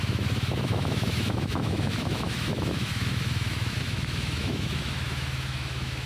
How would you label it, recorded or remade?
remade